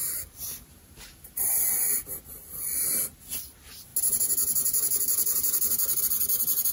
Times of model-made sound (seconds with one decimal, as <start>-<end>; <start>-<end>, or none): 0.0-1.7